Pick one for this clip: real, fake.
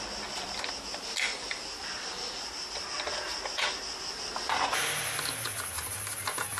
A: real